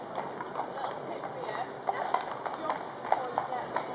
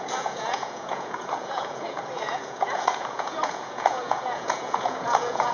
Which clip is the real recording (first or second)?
first